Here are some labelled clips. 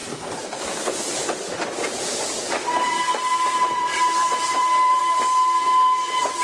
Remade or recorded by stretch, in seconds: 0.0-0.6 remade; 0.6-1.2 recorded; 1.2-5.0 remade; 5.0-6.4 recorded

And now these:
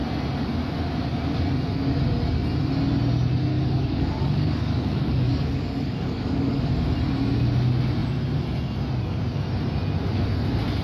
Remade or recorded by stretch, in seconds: 0.0-3.5 recorded; 3.5-6.7 remade; 6.7-10.8 recorded

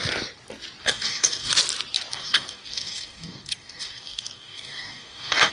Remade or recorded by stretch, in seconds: 0.0-0.8 recorded; 0.8-1.5 remade; 1.5-2.1 recorded; 2.1-5.5 remade

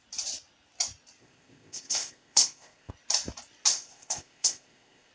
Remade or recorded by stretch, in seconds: 0.0-1.2 recorded; 1.2-2.9 remade; 2.9-3.7 recorded; 3.7-5.1 remade